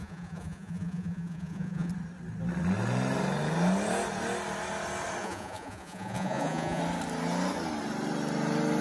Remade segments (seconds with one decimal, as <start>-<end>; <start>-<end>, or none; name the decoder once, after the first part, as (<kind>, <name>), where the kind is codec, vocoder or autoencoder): 0.0-1.9 (vocoder, Vocos); 5.2-6.8